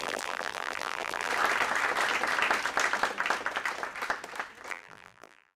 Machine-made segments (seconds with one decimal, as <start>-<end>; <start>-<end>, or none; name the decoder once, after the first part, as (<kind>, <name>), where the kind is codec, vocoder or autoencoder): 0.0-1.3 (vocoder, BigVGAN v2); 4.7-5.6